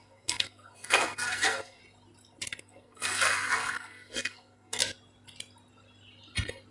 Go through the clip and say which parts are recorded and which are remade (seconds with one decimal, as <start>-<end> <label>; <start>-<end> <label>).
0.0-1.8 remade; 1.8-2.6 recorded; 2.6-4.8 remade; 4.8-6.7 recorded

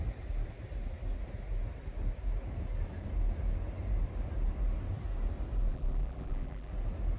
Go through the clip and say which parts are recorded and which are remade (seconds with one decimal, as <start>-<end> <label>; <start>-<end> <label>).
0.0-5.7 recorded; 5.7-6.7 remade; 6.7-7.2 recorded

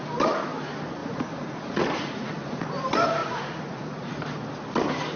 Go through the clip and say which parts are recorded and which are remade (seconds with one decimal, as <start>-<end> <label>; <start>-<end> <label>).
0.0-1.0 recorded; 1.0-2.7 remade; 2.7-3.2 recorded; 3.2-4.1 remade; 4.1-5.2 recorded